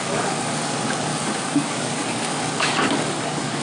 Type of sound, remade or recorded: remade